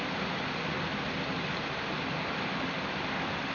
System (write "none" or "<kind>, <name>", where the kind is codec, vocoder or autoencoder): none